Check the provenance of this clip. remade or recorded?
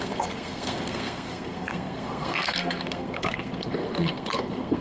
remade